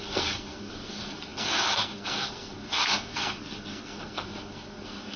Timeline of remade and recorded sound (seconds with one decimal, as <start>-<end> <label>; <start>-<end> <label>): 0.0-5.2 remade